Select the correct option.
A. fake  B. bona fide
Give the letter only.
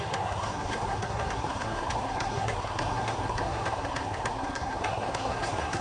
A